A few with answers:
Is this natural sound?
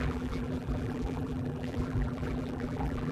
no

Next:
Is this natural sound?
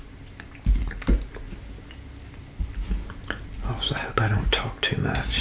yes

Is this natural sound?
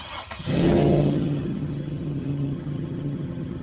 no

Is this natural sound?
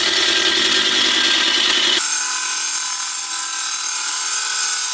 yes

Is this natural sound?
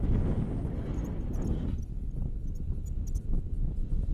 yes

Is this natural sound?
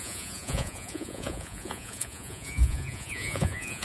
no